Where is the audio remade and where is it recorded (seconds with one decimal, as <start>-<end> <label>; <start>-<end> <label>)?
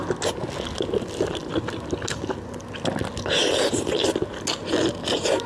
0.0-5.5 recorded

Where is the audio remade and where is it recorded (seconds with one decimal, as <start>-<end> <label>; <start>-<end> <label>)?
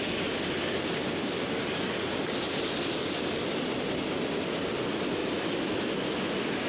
0.0-6.7 recorded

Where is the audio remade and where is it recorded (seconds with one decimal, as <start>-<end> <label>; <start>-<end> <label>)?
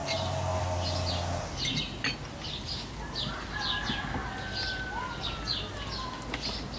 0.0-6.8 recorded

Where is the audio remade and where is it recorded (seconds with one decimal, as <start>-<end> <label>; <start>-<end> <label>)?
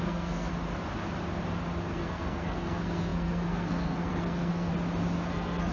0.0-0.5 remade; 0.5-1.9 recorded; 1.9-4.7 remade; 4.7-5.3 recorded; 5.3-5.7 remade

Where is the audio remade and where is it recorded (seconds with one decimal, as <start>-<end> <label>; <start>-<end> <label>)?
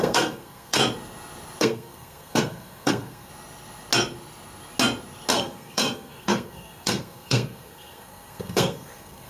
0.0-0.8 remade; 0.8-1.6 recorded; 1.6-3.3 remade; 3.3-5.3 recorded; 5.3-9.3 remade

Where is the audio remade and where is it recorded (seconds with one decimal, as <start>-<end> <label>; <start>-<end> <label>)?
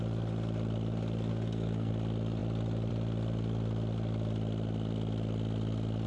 0.0-1.3 recorded; 1.3-1.9 remade; 1.9-6.1 recorded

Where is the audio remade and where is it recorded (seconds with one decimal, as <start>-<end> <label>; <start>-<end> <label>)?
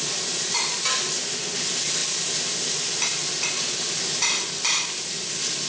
0.0-5.7 recorded